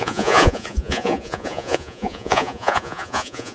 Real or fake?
fake